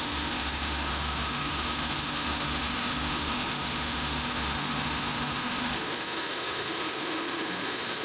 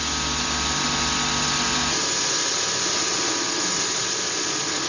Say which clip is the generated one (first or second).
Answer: first